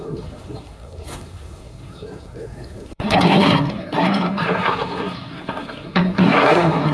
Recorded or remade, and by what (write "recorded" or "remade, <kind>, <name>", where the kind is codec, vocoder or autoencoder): remade, codec, SNAC